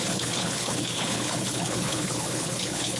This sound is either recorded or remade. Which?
remade